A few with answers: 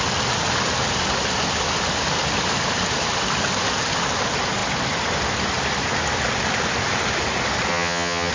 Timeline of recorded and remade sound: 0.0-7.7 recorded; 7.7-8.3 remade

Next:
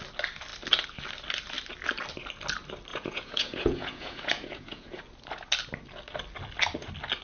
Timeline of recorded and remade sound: 0.0-2.9 recorded; 2.9-5.0 remade; 5.0-7.2 recorded

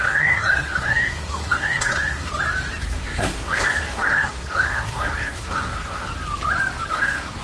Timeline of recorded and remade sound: 0.0-2.3 remade; 2.3-2.8 recorded; 2.8-6.1 remade; 6.1-6.9 recorded; 6.9-7.4 remade

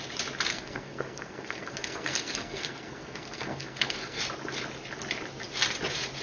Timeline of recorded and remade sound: 0.0-0.5 recorded; 0.5-4.2 remade; 4.2-6.2 recorded

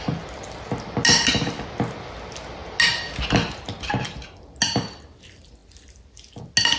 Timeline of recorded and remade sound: 0.0-6.8 recorded